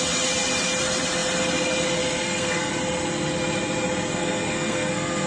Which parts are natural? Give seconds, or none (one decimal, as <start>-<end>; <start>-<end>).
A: 0.0-2.2; 2.7-4.1

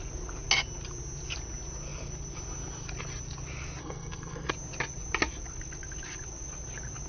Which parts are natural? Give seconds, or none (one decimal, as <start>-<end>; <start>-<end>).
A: 0.0-3.8; 4.5-7.1

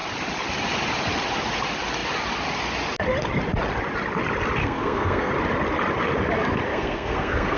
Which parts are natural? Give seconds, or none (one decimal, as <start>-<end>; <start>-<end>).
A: 0.0-4.6; 5.3-6.7

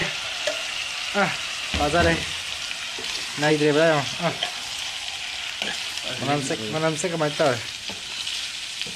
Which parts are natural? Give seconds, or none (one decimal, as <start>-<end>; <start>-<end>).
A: 0.0-9.0